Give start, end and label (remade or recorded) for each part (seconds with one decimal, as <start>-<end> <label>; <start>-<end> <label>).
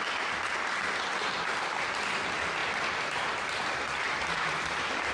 0.0-5.1 recorded